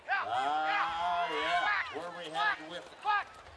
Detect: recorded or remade recorded